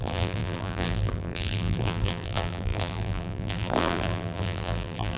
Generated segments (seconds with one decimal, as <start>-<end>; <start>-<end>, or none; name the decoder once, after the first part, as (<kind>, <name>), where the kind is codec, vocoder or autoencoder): 0.0-5.2 (vocoder, BigVGAN v2)